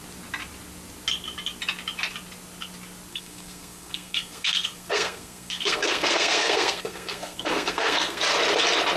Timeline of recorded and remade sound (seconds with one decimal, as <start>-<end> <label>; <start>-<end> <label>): 0.0-3.1 recorded; 3.1-8.2 remade; 8.2-9.0 recorded